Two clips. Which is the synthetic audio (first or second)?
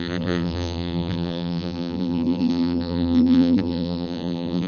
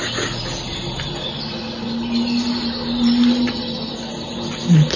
first